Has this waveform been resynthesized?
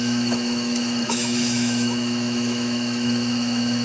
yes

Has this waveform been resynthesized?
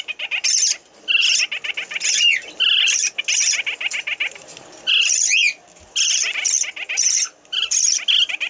no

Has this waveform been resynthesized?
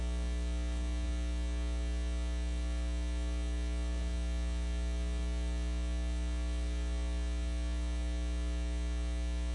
no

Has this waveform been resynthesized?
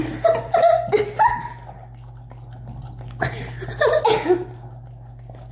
no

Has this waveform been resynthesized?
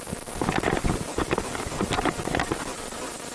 no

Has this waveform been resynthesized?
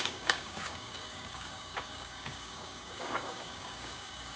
yes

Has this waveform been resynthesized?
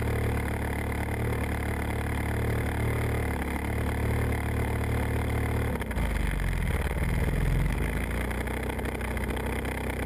no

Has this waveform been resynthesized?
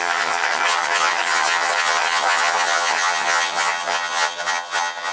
yes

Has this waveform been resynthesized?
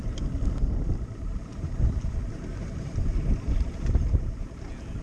no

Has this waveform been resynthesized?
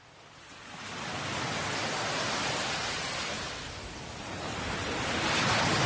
no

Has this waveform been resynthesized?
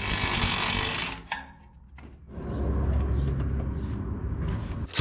no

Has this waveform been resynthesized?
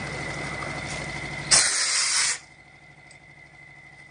no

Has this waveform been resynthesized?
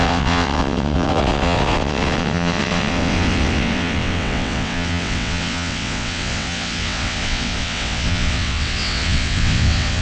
yes